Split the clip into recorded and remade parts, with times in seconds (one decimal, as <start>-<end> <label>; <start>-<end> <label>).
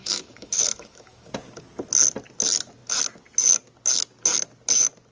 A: 0.0-1.3 remade; 1.3-5.1 recorded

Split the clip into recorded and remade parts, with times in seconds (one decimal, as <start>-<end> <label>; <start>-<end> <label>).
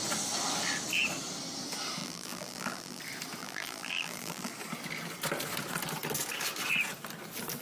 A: 0.0-2.0 recorded; 2.0-3.0 remade; 3.0-3.4 recorded; 3.4-4.5 remade; 4.5-7.6 recorded